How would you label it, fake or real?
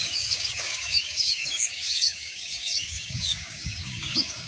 fake